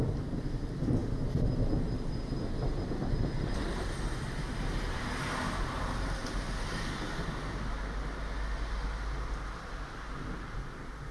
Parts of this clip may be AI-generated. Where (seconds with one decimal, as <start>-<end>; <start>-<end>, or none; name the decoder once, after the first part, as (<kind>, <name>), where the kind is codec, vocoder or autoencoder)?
none